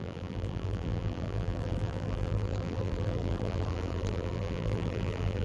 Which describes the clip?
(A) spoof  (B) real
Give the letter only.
A